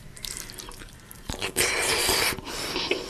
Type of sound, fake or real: fake